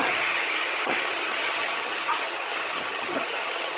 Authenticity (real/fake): fake